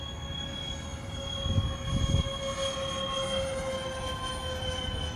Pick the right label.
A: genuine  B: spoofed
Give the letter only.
A